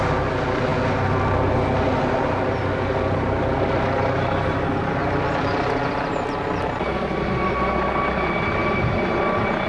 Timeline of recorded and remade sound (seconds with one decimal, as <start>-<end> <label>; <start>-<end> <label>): 0.0-9.7 recorded